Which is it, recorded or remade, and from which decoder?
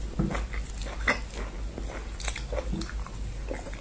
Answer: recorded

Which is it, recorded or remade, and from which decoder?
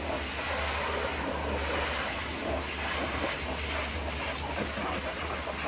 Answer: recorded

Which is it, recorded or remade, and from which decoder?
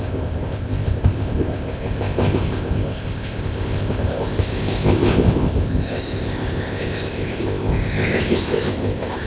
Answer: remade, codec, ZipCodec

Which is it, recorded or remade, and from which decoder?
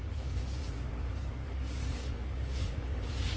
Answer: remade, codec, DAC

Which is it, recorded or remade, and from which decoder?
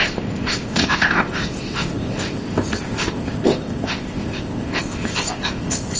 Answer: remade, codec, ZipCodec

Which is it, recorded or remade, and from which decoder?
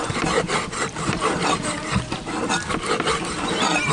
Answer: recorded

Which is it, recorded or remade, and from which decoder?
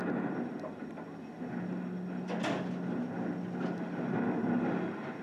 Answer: recorded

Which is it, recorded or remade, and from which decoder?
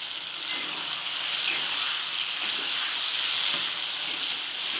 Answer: recorded